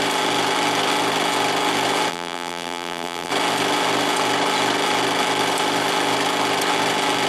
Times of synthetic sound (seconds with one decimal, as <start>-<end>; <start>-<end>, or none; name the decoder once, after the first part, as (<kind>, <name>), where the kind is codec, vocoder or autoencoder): 2.1-3.3 (vocoder, BigVGAN v2)